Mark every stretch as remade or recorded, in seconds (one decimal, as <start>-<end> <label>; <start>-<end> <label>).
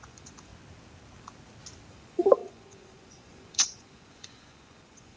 0.0-0.5 remade; 0.5-1.9 recorded; 1.9-5.2 remade